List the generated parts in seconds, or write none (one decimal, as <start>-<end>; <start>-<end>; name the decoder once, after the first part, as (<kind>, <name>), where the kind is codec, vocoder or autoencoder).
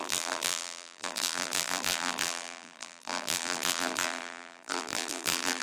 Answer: 0.0-5.6 (vocoder, BigVGAN v2)